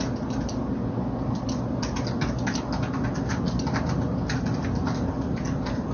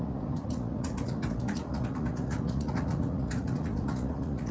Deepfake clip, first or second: second